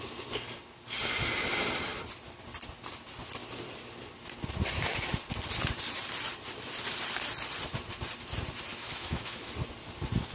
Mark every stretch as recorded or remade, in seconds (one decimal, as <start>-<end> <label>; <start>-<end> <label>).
0.0-8.7 recorded; 8.7-9.5 remade; 9.5-10.3 recorded